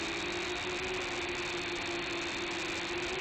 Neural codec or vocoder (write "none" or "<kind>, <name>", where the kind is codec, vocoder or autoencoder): none